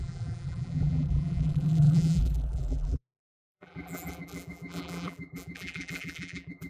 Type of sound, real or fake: fake